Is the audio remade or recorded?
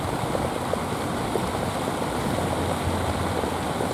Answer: recorded